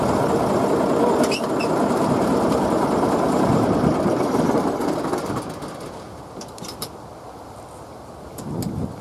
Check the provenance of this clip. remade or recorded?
remade